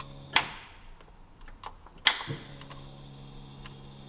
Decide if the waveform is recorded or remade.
recorded